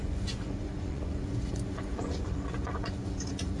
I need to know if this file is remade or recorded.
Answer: remade